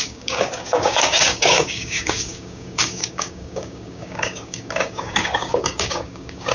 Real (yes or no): no